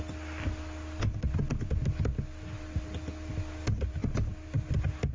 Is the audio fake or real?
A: real